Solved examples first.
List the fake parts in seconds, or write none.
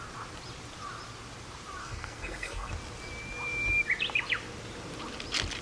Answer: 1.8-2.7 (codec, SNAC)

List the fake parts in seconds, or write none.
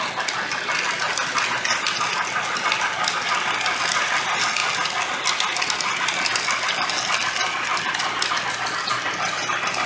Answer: none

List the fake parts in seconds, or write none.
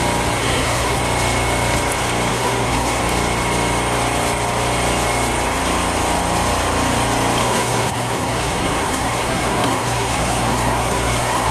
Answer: 0.4-1.0 (codec, SNAC); 2.3-3.0; 7.4-11.5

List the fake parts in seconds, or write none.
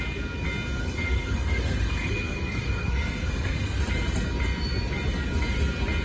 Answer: 0.8-3.8 (codec, SNAC)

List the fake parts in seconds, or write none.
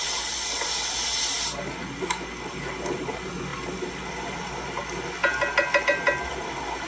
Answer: none